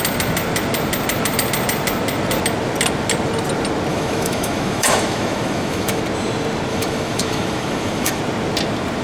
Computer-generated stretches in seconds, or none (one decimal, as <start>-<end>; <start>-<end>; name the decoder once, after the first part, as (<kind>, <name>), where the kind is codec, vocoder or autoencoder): 3.9-6.0 (autoencoder, DAC-VAE); 6.7-8.2